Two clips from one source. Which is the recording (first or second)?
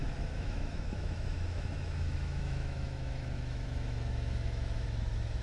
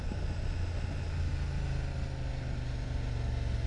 second